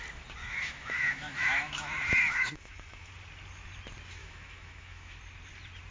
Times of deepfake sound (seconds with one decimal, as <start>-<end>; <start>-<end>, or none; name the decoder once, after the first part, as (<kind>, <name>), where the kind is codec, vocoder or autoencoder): 0.4-3.1 (autoencoder, DAC-VAE); 4.2-5.2